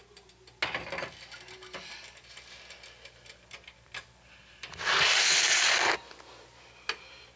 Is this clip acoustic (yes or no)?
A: yes